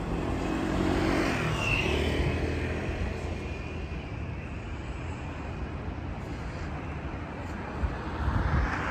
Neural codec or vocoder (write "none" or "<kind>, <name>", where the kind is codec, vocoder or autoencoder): none